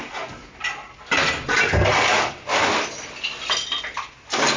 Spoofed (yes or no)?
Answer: no